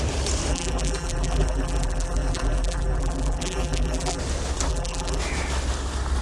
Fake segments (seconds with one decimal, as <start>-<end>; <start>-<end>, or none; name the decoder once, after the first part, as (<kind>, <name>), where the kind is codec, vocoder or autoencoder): 0.5-4.2 (vocoder, BigVGAN v2); 4.7-5.2